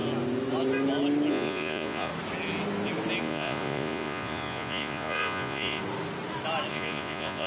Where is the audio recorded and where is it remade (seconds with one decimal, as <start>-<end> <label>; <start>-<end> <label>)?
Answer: 0.0-1.3 recorded; 1.3-2.1 remade; 2.1-3.2 recorded; 3.2-5.8 remade; 5.8-6.7 recorded; 6.7-7.5 remade